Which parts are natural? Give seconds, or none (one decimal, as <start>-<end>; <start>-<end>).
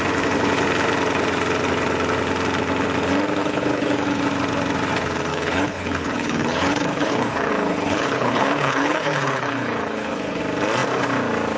0.0-3.4; 4.2-5.3; 10.4-11.6